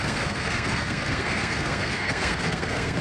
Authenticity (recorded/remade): remade